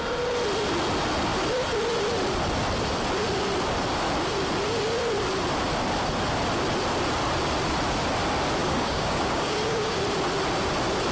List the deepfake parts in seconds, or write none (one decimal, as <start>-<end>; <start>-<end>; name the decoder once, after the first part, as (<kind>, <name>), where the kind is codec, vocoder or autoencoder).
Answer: 8.6-10.0 (codec, DAC)